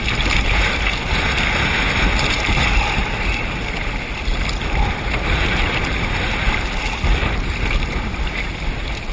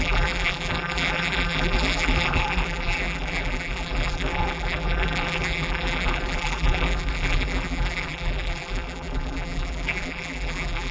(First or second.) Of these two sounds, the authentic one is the first